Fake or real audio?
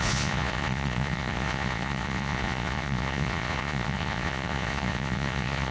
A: fake